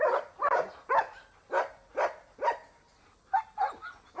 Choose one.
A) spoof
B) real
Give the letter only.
B